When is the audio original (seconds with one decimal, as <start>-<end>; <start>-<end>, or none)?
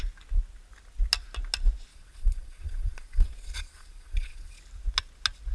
0.0-1.9; 4.6-5.5